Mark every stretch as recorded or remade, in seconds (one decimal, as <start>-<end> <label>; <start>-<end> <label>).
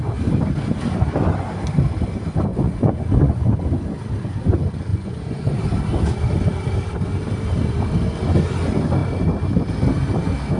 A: 0.0-2.5 recorded; 2.5-3.6 remade; 3.6-4.9 recorded; 4.9-5.6 remade; 5.6-10.6 recorded